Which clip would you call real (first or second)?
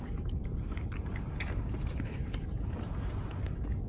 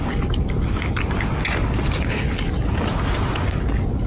second